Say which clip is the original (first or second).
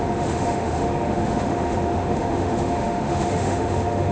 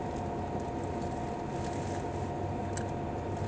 second